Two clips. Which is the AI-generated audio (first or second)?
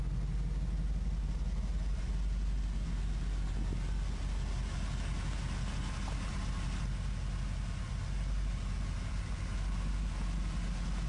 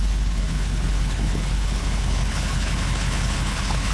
second